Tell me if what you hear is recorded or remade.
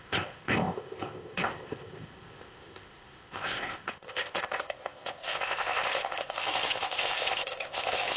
remade